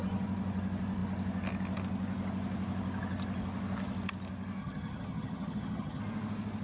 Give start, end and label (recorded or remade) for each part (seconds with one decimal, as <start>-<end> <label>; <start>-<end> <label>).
0.0-4.6 recorded; 4.6-6.0 remade; 6.0-6.6 recorded

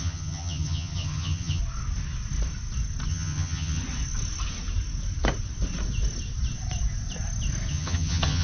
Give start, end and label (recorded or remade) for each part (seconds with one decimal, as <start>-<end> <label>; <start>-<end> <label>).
0.0-1.6 remade; 1.6-3.1 recorded; 3.1-3.8 remade; 3.8-7.7 recorded; 7.7-8.4 remade

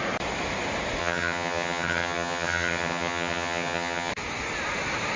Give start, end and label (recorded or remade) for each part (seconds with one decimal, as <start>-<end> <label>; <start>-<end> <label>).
0.0-1.0 recorded; 1.0-4.1 remade; 4.1-5.2 recorded

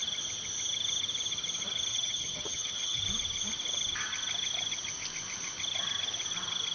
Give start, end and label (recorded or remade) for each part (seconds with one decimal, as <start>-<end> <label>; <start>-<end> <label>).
0.0-1.9 recorded; 1.9-3.0 remade; 3.0-6.7 recorded

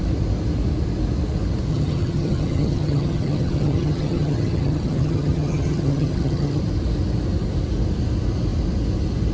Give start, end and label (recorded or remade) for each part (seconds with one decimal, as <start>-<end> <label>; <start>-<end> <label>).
0.0-1.7 recorded; 1.7-6.6 remade; 6.6-9.3 recorded

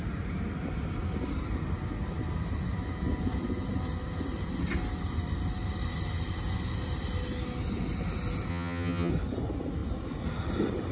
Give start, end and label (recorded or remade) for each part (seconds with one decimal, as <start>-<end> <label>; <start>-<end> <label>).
0.0-8.5 recorded; 8.5-9.1 remade; 9.1-10.9 recorded